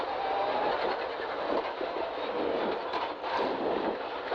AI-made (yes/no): no